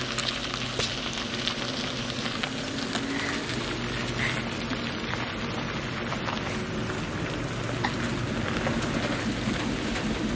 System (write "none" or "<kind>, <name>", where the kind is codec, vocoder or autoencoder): none